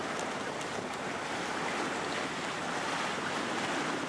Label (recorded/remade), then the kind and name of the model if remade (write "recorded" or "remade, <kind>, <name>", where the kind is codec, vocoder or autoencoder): recorded